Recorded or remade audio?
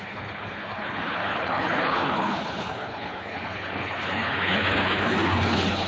remade